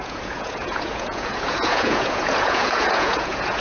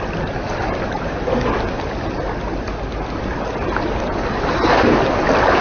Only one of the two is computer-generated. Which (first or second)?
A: first